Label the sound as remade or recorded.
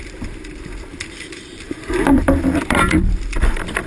remade